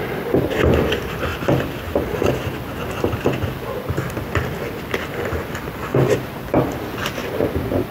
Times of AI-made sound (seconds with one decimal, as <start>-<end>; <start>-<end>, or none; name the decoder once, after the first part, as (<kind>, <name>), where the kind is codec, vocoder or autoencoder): 1.3-2.8 (vocoder, BigVGAN v2); 5.9-6.5